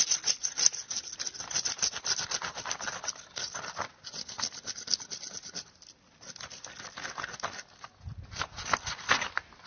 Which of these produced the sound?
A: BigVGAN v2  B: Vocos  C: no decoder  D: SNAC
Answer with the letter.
C